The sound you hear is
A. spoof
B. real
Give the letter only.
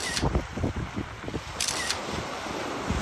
B